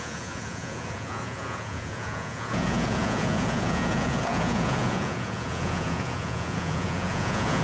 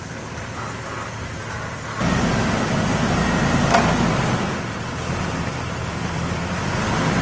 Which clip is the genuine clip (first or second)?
second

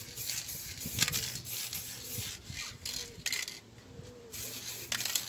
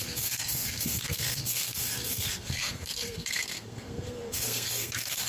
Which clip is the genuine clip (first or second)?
first